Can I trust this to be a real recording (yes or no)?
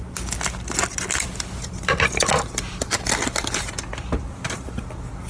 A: yes